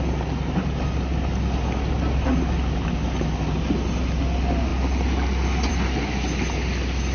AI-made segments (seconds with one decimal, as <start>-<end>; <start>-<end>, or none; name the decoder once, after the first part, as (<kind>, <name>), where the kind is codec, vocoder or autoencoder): none